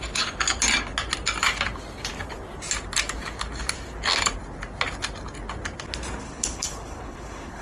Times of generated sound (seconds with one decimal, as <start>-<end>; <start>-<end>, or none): 6.2-7.6